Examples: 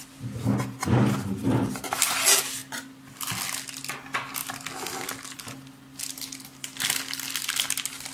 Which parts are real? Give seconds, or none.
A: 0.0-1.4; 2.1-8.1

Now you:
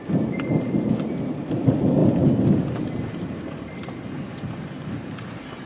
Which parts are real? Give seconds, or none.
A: 0.0-2.0

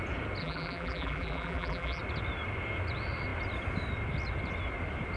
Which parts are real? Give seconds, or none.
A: 0.0-0.4; 2.0-5.2

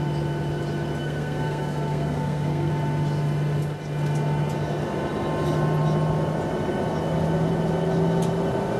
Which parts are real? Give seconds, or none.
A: 0.0-1.0; 2.7-8.8

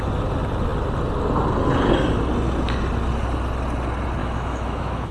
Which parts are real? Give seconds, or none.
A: 0.0-4.2

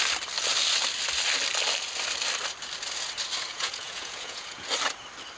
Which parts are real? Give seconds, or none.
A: 0.0-3.5; 4.7-5.4